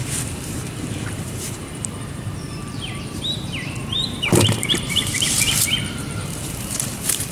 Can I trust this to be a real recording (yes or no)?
no